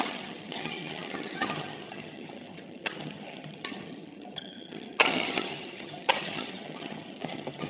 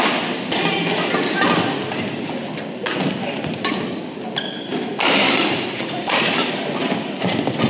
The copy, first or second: first